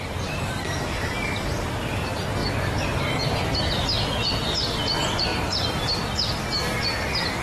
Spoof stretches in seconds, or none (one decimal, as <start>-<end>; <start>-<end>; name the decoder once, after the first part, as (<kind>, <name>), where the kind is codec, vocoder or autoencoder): none